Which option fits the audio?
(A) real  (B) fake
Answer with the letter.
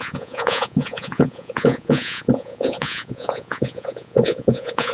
B